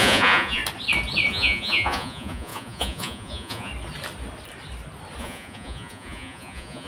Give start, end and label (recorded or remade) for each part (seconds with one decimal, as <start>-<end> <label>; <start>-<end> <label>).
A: 0.0-0.6 remade; 0.6-1.3 recorded; 1.3-3.7 remade; 3.7-5.2 recorded; 5.2-6.9 remade